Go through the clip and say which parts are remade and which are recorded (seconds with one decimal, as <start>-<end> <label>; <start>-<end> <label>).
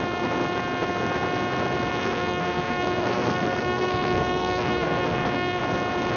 0.0-1.9 recorded; 1.9-5.6 remade; 5.6-6.2 recorded